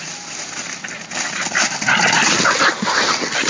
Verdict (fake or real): real